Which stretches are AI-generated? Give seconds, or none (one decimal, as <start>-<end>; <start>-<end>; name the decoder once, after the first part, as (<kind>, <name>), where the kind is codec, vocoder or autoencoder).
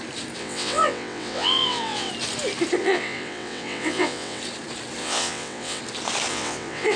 0.4-2.1 (vocoder, WaveNeXt); 2.8-4.4; 5.0-5.8; 6.3-7.0